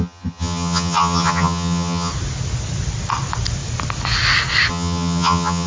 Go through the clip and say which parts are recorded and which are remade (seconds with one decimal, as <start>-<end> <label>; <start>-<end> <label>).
0.0-2.1 remade; 2.1-4.7 recorded; 4.7-5.7 remade

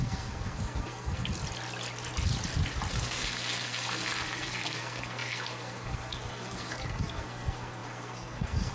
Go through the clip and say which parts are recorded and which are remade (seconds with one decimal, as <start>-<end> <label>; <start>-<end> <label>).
0.0-1.4 remade; 1.4-2.9 recorded; 2.9-8.7 remade